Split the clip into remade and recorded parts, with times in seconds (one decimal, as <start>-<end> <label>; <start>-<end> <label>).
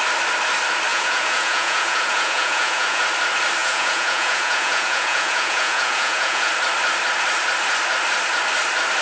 0.0-0.9 recorded; 0.9-3.0 remade; 3.0-3.6 recorded; 3.6-6.5 remade; 6.5-9.0 recorded